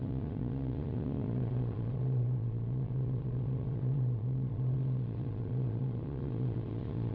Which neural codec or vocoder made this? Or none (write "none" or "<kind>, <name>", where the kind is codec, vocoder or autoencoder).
vocoder, Vocos